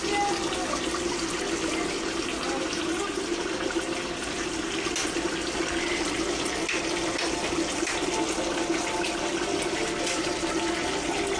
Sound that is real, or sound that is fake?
real